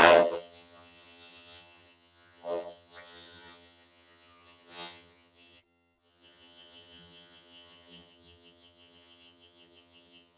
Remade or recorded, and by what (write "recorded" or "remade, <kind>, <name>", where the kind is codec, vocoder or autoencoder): remade, vocoder, HiFi-GAN